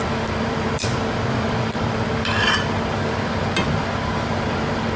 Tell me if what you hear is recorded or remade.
remade